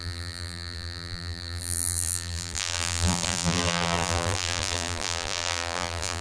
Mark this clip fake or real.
fake